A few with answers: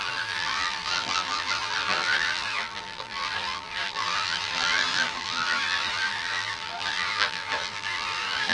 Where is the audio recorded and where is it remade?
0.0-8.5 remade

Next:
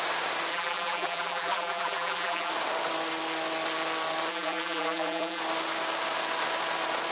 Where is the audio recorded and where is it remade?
0.0-0.5 recorded; 0.5-2.5 remade; 2.5-4.3 recorded; 4.3-5.4 remade; 5.4-7.1 recorded

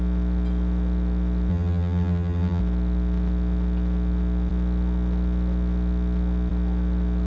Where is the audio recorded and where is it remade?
0.0-1.5 recorded; 1.5-2.6 remade; 2.6-7.3 recorded

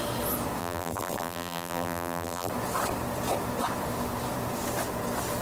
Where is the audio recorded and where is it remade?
0.0-0.6 recorded; 0.6-2.5 remade; 2.5-5.4 recorded

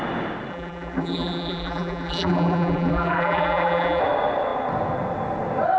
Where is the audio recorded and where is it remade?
0.0-0.5 recorded; 0.5-4.0 remade; 4.0-5.8 recorded

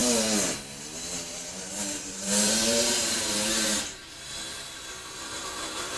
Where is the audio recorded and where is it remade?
0.0-1.5 recorded; 1.5-4.0 remade; 4.0-5.1 recorded; 5.1-6.0 remade

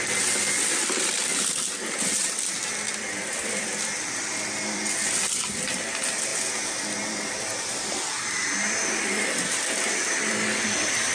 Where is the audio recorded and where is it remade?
0.0-1.3 remade; 1.3-3.2 recorded; 3.2-6.3 remade; 6.3-7.1 recorded; 7.1-11.1 remade

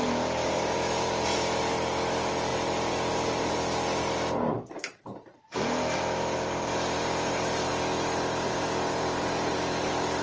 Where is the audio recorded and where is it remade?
0.0-7.7 remade; 7.7-8.5 recorded; 8.5-10.2 remade